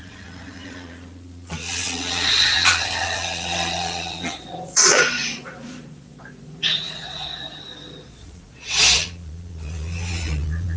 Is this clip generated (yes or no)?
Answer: yes